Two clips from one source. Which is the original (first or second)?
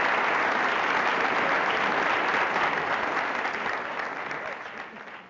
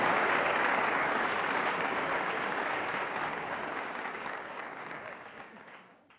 first